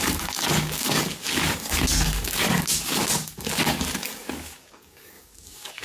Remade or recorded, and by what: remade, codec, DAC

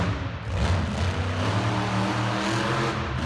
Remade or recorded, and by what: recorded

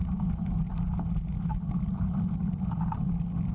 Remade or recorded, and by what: recorded